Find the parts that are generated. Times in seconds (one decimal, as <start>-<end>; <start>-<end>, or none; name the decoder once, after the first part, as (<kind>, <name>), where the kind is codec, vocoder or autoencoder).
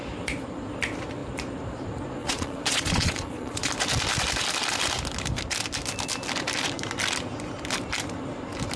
2.2-3.7 (vocoder, Vocos)